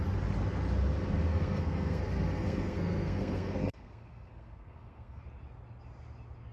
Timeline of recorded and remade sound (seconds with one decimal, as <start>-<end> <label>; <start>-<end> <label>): 0.0-1.3 recorded; 1.3-5.2 remade; 5.2-6.5 recorded